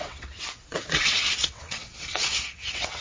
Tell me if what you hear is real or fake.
fake